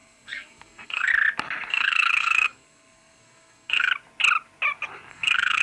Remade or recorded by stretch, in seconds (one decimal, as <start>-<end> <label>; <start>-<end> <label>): 0.0-1.1 remade; 1.1-1.7 recorded; 1.7-3.9 remade; 3.9-5.1 recorded; 5.1-5.6 remade